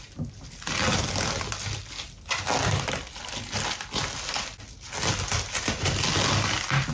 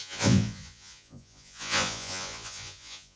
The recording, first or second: first